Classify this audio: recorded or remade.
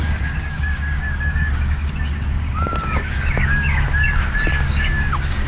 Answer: remade